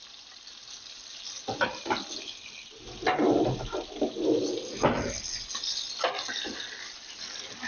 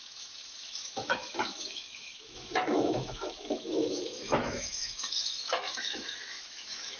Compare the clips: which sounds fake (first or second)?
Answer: second